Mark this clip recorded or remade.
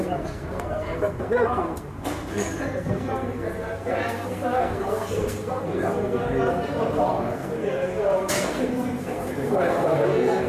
remade